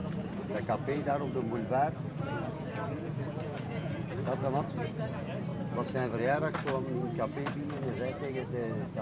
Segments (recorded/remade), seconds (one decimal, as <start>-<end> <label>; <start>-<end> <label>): 0.0-1.1 remade; 1.1-2.1 recorded; 2.1-4.2 remade; 4.2-9.0 recorded